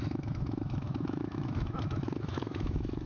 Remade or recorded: remade